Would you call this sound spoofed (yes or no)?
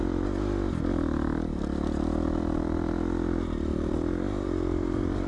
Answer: no